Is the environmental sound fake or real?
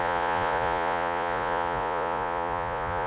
fake